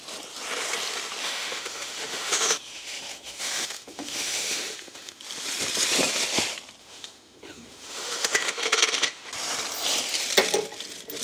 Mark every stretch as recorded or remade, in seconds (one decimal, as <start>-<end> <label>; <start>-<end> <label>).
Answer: 0.0-1.2 recorded; 1.2-5.2 remade; 5.2-6.8 recorded; 6.8-9.3 remade; 9.3-11.2 recorded